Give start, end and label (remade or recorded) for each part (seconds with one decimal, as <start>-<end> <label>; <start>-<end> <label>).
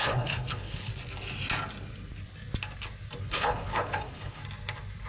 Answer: 0.0-0.9 remade; 0.9-3.2 recorded; 3.2-4.4 remade; 4.4-5.1 recorded